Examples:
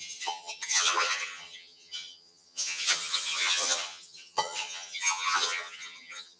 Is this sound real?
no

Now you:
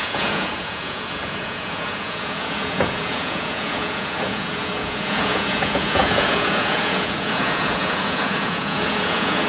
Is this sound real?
no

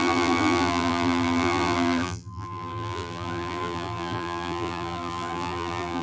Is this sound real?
no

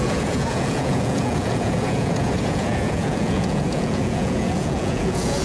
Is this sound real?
no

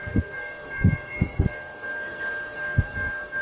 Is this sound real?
no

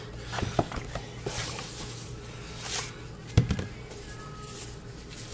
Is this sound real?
yes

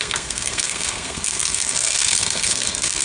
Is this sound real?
no